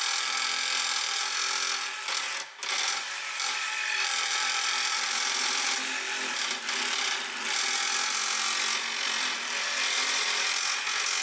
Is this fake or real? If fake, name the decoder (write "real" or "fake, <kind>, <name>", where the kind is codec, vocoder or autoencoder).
real